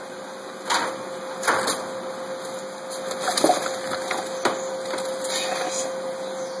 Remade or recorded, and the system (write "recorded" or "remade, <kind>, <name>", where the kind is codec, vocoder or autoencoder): recorded